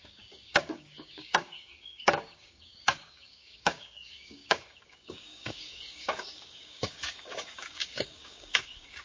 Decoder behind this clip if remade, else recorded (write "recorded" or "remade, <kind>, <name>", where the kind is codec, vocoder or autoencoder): remade, codec, DAC